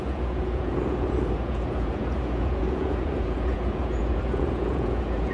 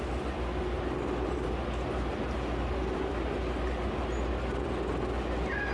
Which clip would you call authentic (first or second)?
second